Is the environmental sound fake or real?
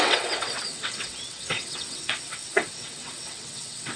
fake